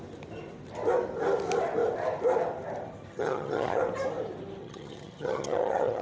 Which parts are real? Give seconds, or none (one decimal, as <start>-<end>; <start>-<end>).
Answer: 0.0-3.1; 3.8-4.6